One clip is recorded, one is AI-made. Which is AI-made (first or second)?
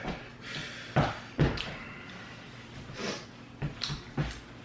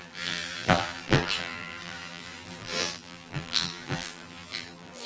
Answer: second